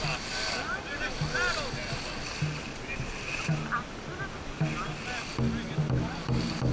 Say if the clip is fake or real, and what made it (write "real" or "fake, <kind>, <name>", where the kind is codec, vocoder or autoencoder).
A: real